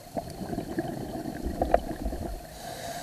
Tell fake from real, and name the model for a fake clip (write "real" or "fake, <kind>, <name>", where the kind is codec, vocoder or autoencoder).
fake, vocoder, BigVGAN v2